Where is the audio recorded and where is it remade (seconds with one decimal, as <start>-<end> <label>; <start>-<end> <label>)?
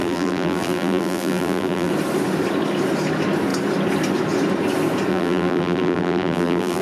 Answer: 0.0-1.9 remade; 1.9-5.1 recorded; 5.1-6.8 remade